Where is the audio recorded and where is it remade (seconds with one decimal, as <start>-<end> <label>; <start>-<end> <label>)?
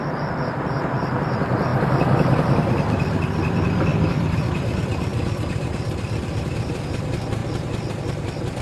0.0-1.7 remade; 1.7-3.5 recorded; 3.5-7.4 remade; 7.4-7.9 recorded; 7.9-8.6 remade